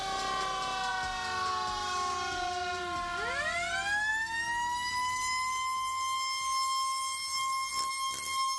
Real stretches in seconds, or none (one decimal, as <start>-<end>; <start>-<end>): 0.0-8.6